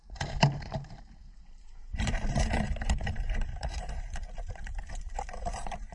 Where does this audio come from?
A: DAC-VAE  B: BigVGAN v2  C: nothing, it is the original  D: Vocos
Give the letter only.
B